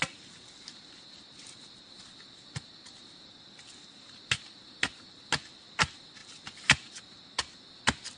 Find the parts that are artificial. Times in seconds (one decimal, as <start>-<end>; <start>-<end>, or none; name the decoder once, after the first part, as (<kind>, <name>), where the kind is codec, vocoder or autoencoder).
none